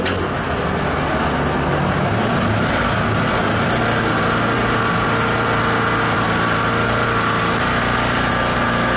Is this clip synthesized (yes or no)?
no